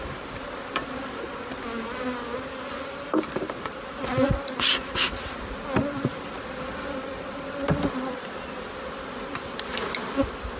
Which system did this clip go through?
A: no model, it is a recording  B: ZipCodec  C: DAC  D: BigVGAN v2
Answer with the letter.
A